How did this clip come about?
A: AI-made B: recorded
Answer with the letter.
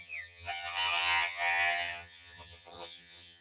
A